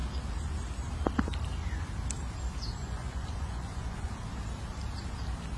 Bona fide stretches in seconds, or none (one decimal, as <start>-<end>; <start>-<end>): 0.0-2.8; 4.1-5.6